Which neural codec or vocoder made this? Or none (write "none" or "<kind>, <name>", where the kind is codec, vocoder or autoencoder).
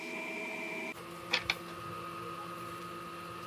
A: none